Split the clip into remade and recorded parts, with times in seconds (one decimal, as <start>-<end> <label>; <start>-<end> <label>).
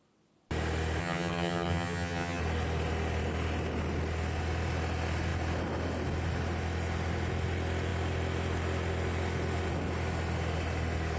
0.0-1.0 recorded; 1.0-2.4 remade; 2.4-11.2 recorded